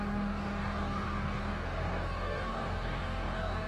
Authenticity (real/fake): fake